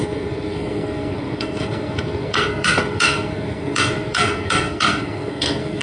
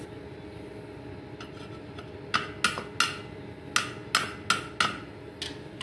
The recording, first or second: second